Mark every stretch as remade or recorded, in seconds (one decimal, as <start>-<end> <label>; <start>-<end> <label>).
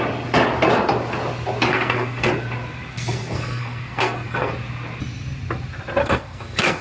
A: 0.0-1.7 recorded; 1.7-2.3 remade; 2.3-2.9 recorded; 2.9-4.5 remade; 4.5-6.0 recorded; 6.0-6.8 remade